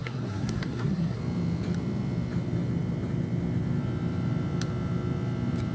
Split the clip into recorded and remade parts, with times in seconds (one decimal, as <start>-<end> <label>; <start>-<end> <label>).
0.0-1.2 remade; 1.2-5.7 recorded